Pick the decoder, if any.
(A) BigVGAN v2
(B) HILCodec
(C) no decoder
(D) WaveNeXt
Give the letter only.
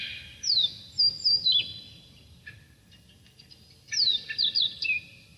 C